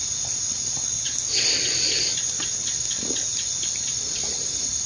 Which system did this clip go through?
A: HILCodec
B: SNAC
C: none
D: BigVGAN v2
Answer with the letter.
C